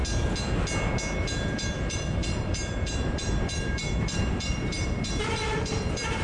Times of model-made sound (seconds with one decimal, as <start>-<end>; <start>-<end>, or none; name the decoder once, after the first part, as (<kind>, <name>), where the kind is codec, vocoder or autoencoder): 1.2-6.2 (vocoder, BigVGAN v2)